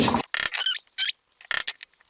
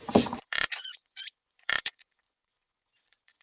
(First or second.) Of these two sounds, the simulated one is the second